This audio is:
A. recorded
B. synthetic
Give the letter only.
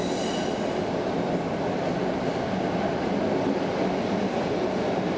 A